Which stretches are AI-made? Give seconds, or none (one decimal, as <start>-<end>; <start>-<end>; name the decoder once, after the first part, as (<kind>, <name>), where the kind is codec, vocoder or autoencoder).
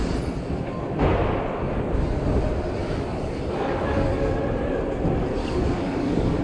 2.8-4.3 (codec, DAC); 5.4-6.4